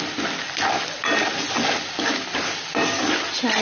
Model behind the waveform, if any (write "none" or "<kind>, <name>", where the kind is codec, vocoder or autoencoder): none